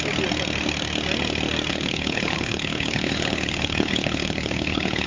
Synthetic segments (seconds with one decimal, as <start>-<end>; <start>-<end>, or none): 1.7-5.1